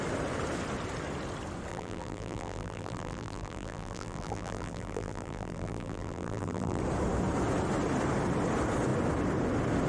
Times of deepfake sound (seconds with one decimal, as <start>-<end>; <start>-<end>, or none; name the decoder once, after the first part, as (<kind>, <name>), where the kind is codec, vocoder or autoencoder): 1.7-6.8 (vocoder, BigVGAN v2)